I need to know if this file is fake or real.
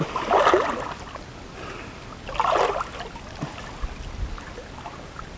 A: real